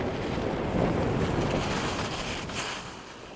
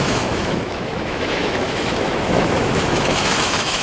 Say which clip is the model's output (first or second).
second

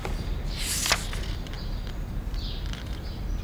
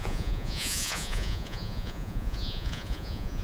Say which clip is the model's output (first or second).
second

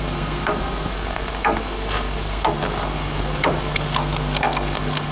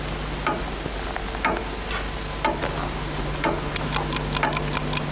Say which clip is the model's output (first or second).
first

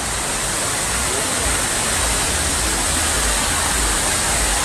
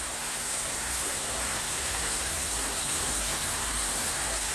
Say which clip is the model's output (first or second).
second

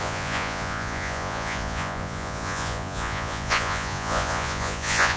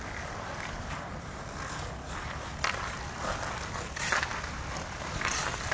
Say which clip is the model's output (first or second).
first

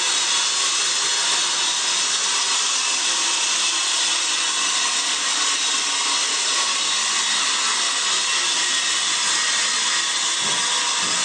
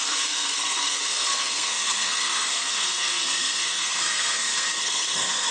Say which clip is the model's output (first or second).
second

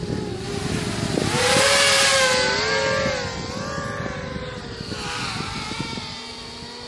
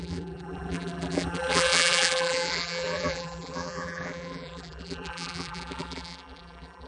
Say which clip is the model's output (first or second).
second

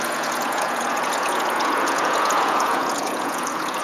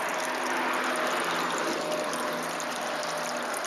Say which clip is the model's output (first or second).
first